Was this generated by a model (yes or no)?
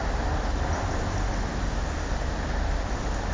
no